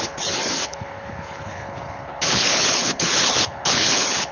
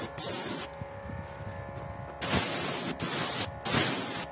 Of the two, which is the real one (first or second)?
second